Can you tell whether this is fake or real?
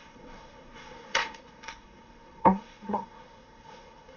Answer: fake